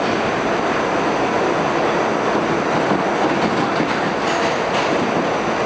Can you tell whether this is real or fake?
real